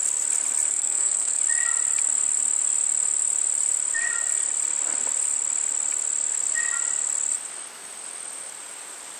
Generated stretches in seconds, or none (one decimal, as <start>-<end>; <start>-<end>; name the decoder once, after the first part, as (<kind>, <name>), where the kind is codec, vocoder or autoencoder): 0.7-1.4 (codec, SNAC)